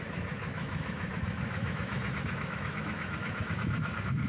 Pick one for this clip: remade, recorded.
remade